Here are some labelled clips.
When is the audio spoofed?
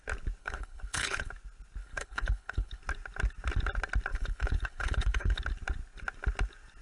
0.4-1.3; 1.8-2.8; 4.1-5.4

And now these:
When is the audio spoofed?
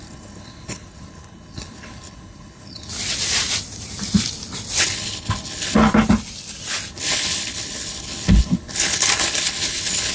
0.0-2.9; 4.8-5.8; 6.9-10.1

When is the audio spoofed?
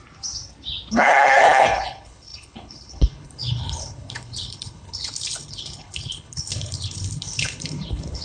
0.9-8.2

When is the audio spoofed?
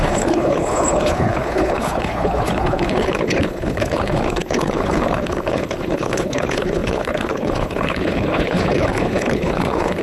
0.0-10.0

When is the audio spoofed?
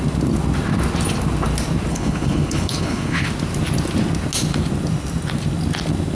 1.9-3.3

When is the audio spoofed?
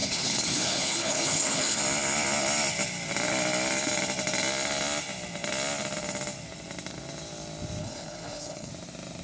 0.0-1.8; 7.8-8.7